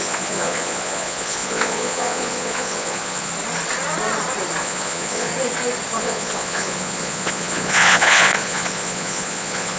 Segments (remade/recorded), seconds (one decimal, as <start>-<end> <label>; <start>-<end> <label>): 0.0-3.3 remade; 3.3-4.6 recorded; 4.6-5.3 remade; 5.3-6.0 recorded; 6.0-9.8 remade